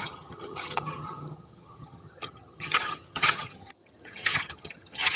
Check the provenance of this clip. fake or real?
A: fake